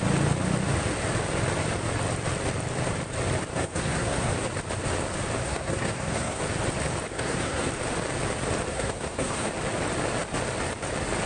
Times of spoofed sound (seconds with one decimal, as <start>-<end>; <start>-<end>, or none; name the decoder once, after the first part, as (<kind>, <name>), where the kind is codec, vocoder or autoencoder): 3.5-4.3 (codec, SNAC); 5.4-6.4; 7.1-7.7; 8.7-9.5